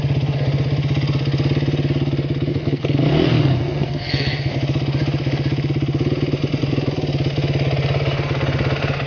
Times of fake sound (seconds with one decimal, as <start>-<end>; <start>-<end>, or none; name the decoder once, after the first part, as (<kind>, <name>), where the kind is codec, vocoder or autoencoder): 2.5-4.5 (codec, SNAC)